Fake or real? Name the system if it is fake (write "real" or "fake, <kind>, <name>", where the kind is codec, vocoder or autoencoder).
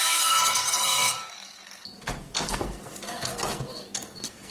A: fake, codec, SNAC